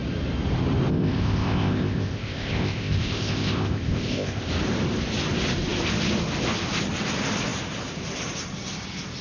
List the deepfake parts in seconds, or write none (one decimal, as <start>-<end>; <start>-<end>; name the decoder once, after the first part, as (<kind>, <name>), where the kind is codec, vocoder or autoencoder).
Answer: 0.9-4.5 (codec, ZipCodec)